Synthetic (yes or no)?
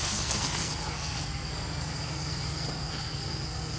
yes